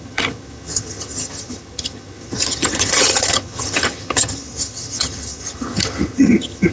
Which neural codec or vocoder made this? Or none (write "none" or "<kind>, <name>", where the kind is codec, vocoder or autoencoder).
vocoder, HiFi-GAN